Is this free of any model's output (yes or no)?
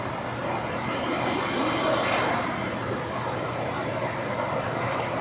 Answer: yes